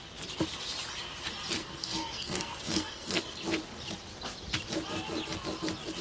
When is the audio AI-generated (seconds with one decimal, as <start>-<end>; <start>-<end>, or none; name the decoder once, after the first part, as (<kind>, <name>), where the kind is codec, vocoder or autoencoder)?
1.6-3.2 (codec, SNAC)